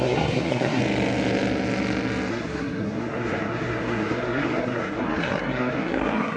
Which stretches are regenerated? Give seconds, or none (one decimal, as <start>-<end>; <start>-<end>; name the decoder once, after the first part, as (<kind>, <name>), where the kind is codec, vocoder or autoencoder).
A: 0.0-0.8 (codec, SNAC); 2.3-6.4